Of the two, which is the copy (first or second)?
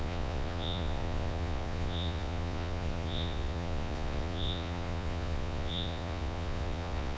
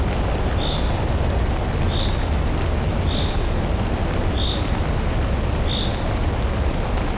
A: first